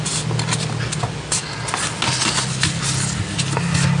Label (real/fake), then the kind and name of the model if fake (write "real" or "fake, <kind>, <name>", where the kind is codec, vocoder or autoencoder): real